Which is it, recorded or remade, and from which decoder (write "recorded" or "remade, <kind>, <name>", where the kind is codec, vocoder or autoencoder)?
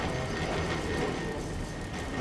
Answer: recorded